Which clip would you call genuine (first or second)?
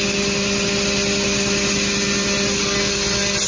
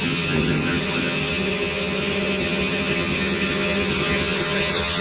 first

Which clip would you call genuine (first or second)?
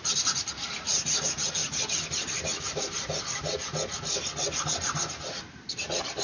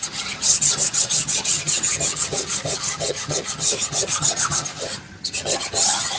first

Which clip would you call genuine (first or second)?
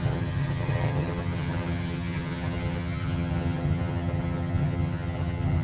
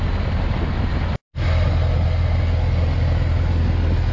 second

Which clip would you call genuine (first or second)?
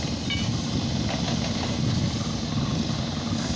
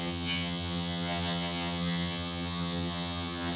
first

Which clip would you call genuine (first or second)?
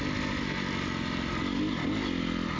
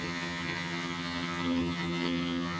first